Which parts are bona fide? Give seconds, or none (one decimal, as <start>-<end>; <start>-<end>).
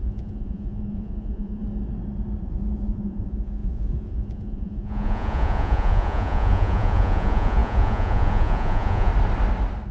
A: 1.6-2.4; 9.1-9.9